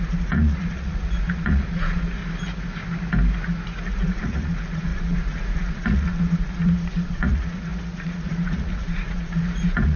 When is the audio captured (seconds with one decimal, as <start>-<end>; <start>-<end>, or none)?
2.2-3.9